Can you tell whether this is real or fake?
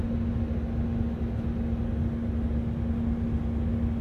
real